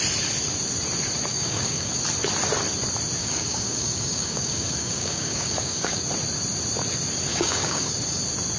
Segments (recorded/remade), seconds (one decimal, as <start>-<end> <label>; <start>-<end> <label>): 0.0-1.3 recorded; 1.3-1.9 remade; 1.9-3.2 recorded; 3.2-6.0 remade; 6.0-7.3 recorded; 7.3-7.9 remade; 7.9-8.6 recorded